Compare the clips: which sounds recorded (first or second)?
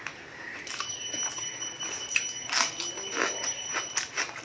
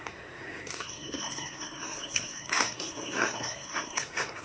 first